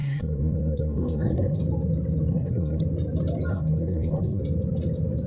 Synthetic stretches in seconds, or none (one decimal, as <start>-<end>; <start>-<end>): 0.0-1.6; 2.3-2.8; 3.5-4.4